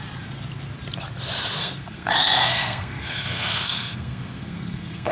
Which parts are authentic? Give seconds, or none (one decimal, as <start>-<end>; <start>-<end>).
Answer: 0.0-1.6